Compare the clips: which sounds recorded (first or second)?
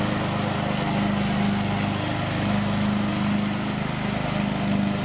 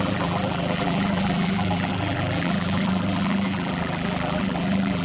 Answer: first